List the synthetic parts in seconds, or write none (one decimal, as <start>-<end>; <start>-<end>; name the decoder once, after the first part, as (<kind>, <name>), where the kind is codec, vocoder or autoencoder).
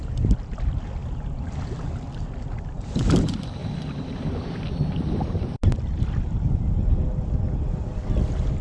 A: none